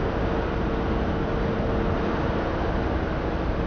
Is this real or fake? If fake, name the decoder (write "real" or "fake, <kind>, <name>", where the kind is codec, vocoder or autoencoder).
real